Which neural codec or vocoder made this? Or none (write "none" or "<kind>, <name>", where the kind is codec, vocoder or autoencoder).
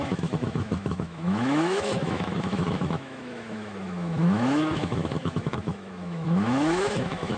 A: autoencoder, DAC-VAE